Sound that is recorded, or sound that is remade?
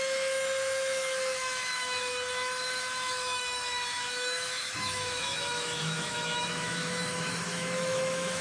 remade